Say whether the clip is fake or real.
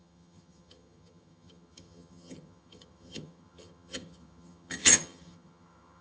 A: fake